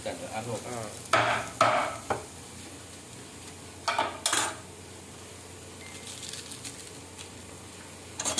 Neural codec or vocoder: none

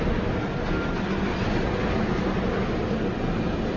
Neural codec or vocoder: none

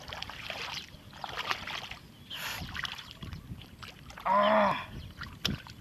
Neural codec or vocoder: none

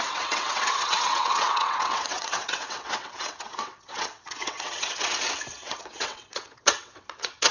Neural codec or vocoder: vocoder, WaveNeXt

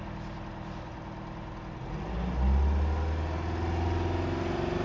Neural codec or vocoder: none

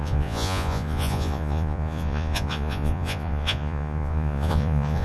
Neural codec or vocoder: vocoder, Vocos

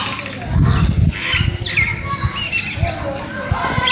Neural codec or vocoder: none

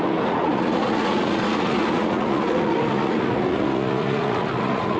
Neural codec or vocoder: vocoder, Vocos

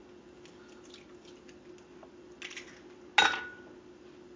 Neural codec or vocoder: none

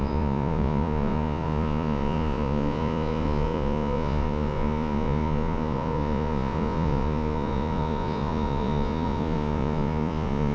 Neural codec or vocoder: vocoder, Vocos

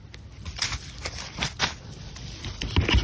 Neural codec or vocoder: none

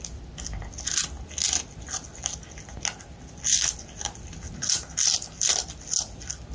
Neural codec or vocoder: none